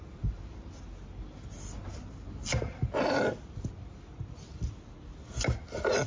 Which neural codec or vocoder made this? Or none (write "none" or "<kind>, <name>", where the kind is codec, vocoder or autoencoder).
none